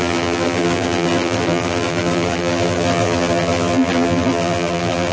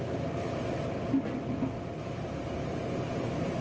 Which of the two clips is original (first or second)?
second